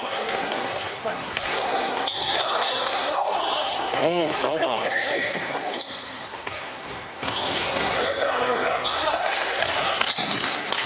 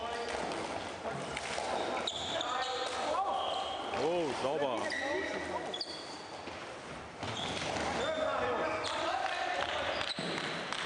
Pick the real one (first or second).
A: second